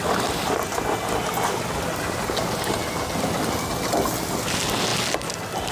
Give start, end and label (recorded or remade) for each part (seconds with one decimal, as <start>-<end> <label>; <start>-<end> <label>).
0.0-5.7 recorded